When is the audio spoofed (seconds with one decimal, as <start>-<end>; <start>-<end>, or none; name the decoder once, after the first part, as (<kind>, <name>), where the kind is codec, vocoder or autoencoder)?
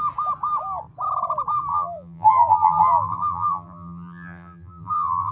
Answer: 1.7-5.3 (vocoder, BigVGAN v2)